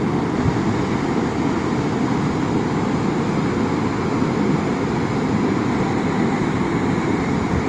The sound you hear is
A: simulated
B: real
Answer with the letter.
B